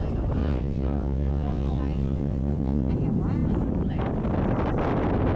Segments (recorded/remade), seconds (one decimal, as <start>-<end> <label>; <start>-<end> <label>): 0.0-0.4 recorded; 0.4-2.9 remade; 2.9-5.4 recorded